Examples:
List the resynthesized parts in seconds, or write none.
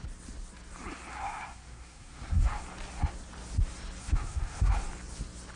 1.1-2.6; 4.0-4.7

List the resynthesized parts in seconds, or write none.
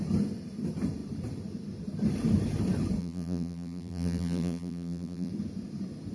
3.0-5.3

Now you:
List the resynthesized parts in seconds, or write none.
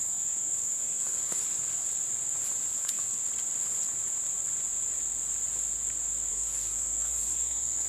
0.0-1.4; 2.8-3.2; 6.3-7.9